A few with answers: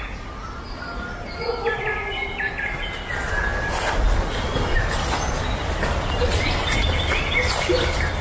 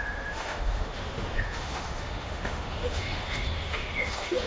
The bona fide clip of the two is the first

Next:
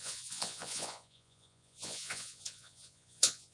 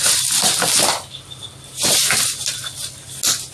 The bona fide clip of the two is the second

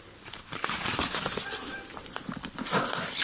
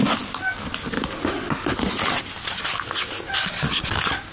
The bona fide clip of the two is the second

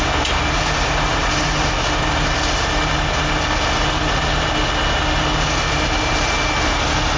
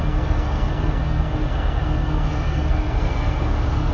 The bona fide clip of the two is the first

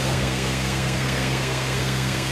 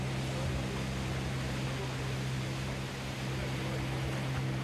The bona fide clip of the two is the second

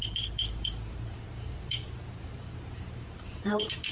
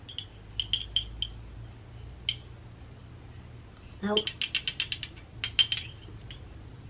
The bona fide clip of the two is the second